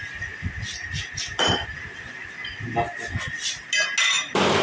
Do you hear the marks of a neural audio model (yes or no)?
no